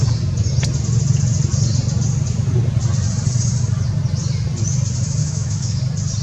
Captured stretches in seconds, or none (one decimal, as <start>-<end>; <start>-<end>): 0.0-5.2; 5.8-6.2